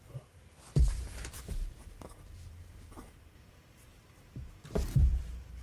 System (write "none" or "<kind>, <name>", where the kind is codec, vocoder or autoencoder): vocoder, BigVGAN v2